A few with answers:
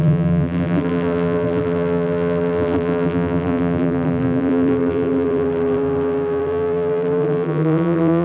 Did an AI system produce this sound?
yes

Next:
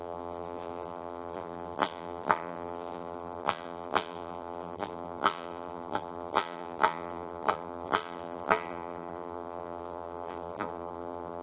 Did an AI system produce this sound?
yes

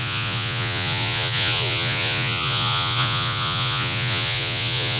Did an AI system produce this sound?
yes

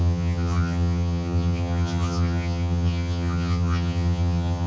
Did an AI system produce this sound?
yes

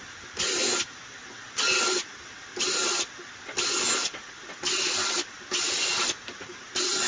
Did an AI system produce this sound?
no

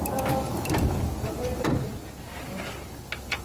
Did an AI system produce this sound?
no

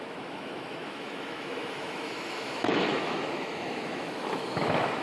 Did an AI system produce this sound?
yes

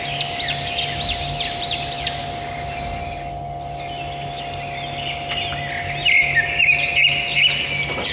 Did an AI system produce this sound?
no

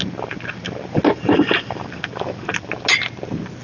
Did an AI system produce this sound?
no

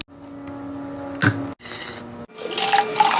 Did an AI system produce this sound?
no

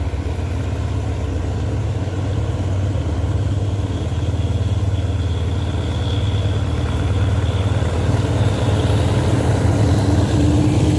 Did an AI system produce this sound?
no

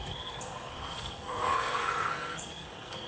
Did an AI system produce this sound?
yes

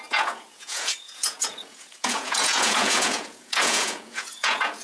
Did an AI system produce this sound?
yes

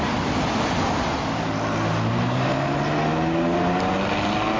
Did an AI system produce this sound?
no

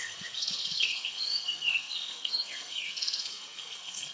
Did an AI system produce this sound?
yes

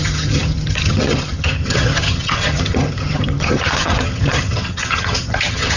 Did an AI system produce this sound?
yes